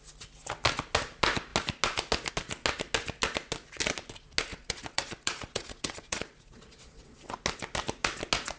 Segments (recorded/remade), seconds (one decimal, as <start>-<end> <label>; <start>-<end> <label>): 0.0-4.5 recorded; 4.5-7.3 remade; 7.3-8.6 recorded